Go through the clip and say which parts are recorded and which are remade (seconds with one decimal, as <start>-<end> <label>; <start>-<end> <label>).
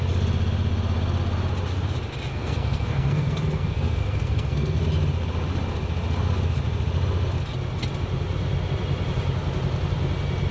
0.0-2.3 recorded; 2.3-4.8 remade; 4.8-10.5 recorded